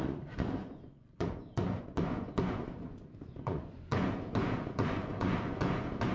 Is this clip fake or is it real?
fake